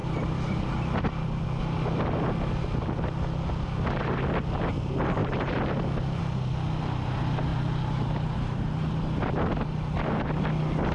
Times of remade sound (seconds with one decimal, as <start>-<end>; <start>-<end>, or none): 7.5-9.0